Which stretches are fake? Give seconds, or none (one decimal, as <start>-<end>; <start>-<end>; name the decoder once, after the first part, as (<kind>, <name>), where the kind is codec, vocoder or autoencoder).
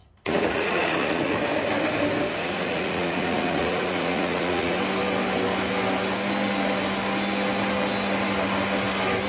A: 0.0-1.4 (vocoder, Vocos); 2.4-4.8